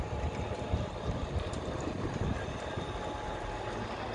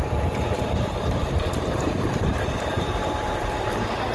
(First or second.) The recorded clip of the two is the first